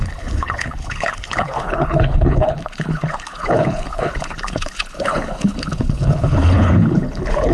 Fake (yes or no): yes